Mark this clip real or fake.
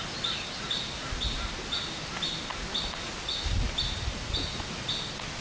real